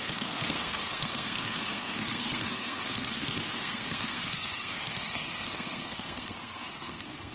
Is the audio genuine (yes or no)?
no